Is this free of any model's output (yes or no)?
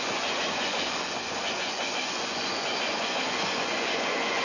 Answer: no